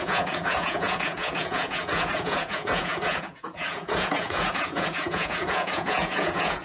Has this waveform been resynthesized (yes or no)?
yes